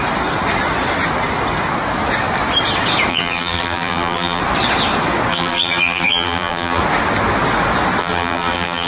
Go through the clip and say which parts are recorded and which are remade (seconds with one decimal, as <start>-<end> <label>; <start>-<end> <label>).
0.0-3.1 recorded; 3.1-4.4 remade; 4.4-5.3 recorded; 5.3-6.8 remade; 6.8-8.0 recorded; 8.0-8.9 remade